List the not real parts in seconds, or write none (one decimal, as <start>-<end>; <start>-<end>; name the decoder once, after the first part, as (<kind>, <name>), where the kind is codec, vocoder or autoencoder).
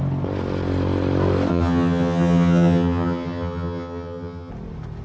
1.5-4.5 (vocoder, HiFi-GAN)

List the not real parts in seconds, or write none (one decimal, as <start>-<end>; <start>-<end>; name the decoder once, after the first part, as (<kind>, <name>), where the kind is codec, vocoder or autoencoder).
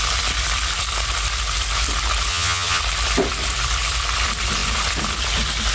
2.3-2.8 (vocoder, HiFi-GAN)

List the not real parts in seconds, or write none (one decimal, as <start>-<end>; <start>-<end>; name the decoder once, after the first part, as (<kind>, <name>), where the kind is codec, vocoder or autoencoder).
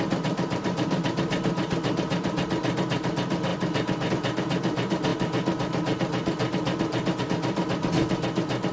none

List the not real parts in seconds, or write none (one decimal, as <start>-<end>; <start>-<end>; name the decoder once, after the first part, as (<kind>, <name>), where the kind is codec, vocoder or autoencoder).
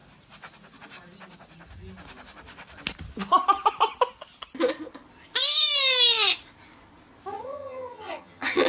7.3-8.7 (vocoder, HiFi-GAN)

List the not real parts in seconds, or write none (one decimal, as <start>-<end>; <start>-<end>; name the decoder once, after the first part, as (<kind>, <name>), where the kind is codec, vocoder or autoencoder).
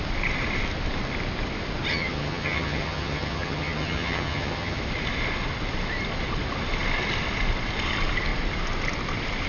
1.9-4.8 (vocoder, HiFi-GAN)